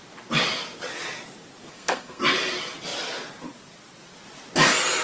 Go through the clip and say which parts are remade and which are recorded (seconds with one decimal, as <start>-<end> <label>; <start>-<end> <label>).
0.0-1.7 recorded; 1.7-2.2 remade; 2.2-5.0 recorded